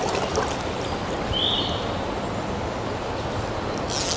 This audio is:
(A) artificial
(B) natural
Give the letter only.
B